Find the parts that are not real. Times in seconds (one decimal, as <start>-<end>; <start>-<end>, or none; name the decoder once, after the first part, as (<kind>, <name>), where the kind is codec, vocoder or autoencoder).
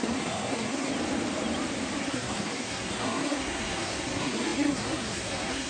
0.0-0.9 (codec, SNAC); 2.0-5.7